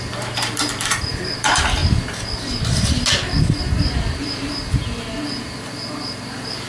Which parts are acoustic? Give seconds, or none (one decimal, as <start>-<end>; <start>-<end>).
1.8-3.6